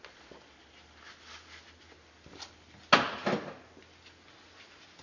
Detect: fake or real real